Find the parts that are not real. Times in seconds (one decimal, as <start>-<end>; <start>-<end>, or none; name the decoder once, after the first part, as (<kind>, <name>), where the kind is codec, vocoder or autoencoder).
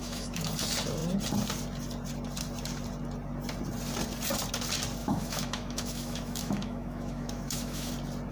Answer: 0.0-0.5 (autoencoder, DAC-VAE); 5.0-7.9